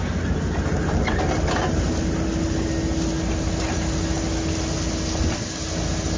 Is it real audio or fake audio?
real